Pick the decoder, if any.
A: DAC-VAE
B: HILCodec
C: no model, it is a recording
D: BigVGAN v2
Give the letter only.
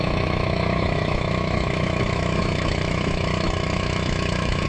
A